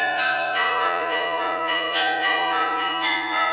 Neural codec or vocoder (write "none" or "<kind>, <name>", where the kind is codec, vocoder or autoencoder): vocoder, Vocos